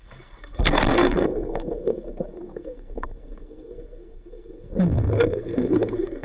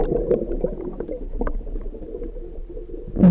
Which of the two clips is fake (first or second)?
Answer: first